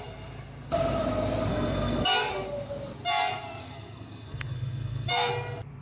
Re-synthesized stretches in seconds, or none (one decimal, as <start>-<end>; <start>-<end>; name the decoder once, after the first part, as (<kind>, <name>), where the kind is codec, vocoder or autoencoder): 1.5-2.2 (codec, SNAC); 3.6-5.3